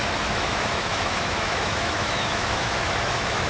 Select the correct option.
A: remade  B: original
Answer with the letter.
A